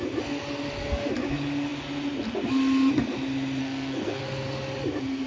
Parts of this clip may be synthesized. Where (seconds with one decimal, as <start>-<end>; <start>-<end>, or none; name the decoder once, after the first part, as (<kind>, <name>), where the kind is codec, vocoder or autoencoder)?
3.6-4.2 (codec, SNAC)